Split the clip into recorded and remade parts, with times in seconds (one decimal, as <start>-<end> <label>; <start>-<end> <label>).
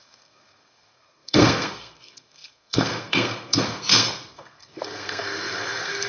0.0-6.1 remade